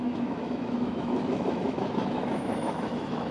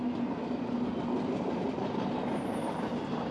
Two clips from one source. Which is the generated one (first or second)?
first